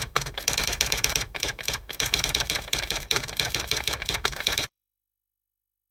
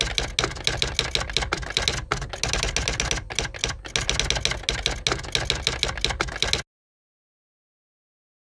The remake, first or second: first